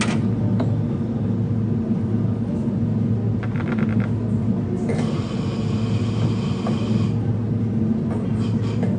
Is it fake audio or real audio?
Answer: real